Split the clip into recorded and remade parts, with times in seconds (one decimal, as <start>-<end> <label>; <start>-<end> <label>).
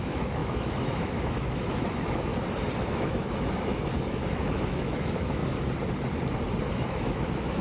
0.0-2.3 remade; 2.3-2.8 recorded; 2.8-5.4 remade; 5.4-6.7 recorded; 6.7-7.6 remade